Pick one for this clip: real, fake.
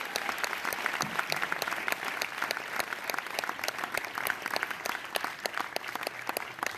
real